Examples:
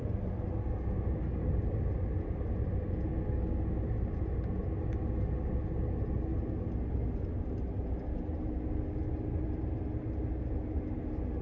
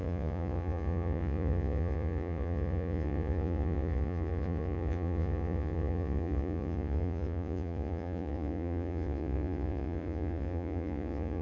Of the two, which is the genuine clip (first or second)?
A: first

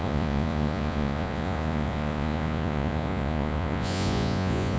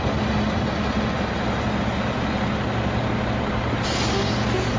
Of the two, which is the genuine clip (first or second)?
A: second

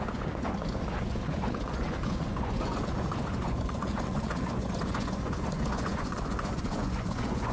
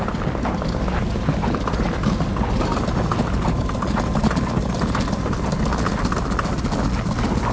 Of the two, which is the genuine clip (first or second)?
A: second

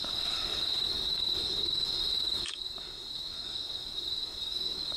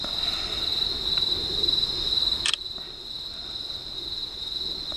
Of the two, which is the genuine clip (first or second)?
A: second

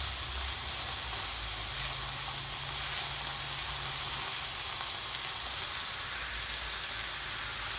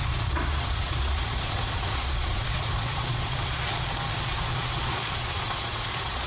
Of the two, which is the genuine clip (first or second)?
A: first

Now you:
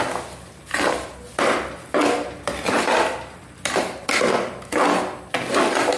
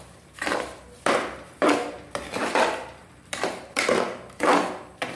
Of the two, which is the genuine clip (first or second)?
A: first